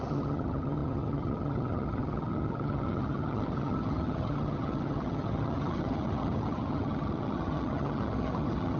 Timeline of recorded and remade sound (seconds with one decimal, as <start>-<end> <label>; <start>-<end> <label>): 0.0-8.8 remade